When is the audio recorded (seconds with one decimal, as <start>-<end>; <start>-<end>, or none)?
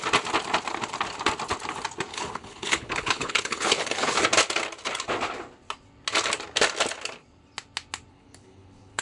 0.0-2.1; 4.2-8.1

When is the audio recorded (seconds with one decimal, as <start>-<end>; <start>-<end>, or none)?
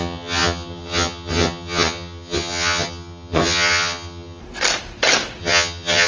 4.4-5.4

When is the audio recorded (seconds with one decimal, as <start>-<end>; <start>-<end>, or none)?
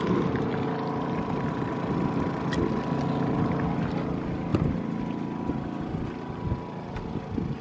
0.0-7.6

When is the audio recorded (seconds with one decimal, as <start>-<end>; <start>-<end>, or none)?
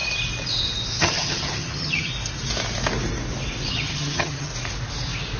0.0-1.0; 2.1-3.7; 4.5-5.4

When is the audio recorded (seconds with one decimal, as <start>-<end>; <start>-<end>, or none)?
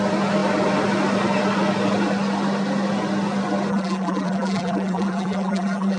0.0-3.7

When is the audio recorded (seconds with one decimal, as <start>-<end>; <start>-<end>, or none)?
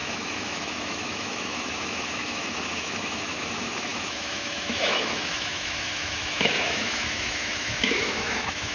none